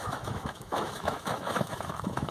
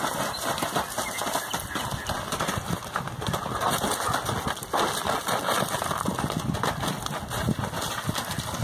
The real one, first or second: second